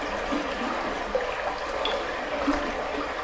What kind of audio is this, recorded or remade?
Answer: recorded